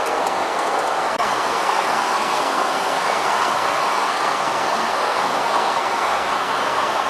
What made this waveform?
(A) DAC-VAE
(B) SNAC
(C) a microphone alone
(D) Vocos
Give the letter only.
B